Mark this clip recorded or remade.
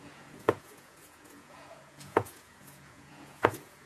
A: remade